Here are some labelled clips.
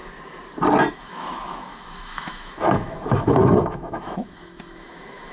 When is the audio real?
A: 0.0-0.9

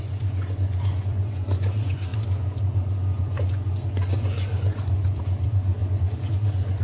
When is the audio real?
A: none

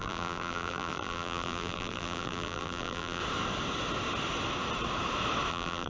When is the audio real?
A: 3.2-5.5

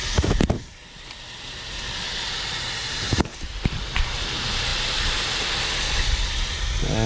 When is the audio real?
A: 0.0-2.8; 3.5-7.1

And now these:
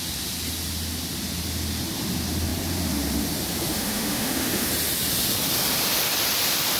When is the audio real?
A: 0.0-3.7; 4.7-6.8

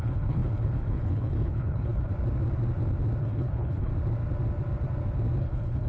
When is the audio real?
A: 2.1-3.2; 3.9-5.4

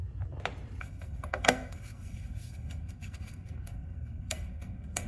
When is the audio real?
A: 0.0-0.8